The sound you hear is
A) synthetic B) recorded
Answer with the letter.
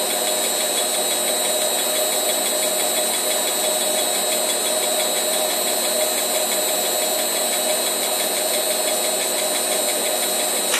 B